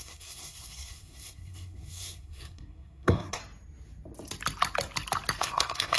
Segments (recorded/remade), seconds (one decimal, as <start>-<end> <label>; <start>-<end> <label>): 0.0-3.4 remade; 3.4-5.4 recorded; 5.4-6.0 remade